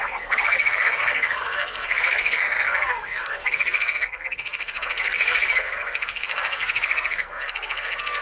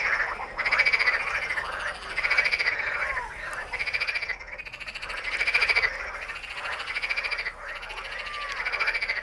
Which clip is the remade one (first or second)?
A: first